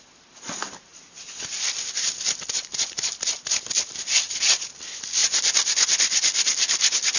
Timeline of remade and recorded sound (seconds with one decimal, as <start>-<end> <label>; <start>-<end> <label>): 0.0-5.2 remade; 5.2-7.2 recorded